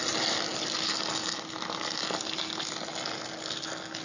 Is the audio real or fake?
real